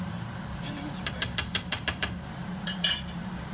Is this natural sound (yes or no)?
no